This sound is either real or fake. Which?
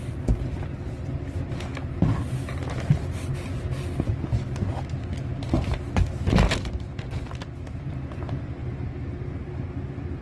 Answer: real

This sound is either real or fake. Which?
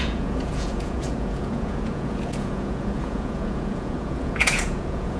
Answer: fake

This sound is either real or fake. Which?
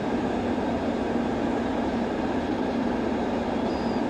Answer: fake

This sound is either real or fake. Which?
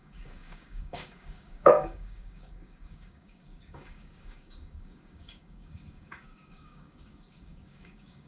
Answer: fake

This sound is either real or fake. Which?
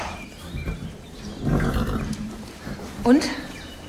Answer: fake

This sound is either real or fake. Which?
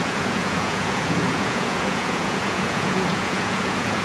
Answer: fake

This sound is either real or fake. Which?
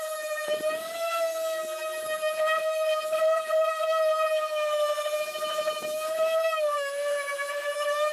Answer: fake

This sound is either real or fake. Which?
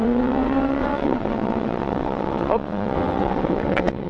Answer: fake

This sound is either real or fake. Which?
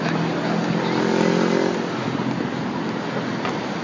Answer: real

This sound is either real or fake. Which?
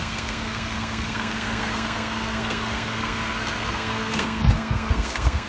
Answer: fake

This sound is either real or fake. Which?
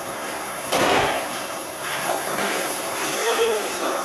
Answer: fake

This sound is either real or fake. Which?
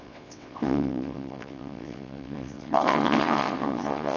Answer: fake